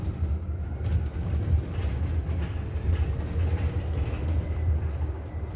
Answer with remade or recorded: recorded